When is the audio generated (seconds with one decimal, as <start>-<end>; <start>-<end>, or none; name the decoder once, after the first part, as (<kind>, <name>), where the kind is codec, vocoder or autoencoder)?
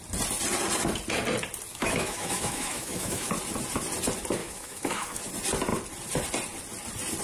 1.7-3.3 (autoencoder, DAC-VAE); 4.4-5.2